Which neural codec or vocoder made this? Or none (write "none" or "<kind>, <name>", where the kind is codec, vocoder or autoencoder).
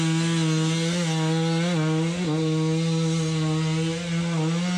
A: none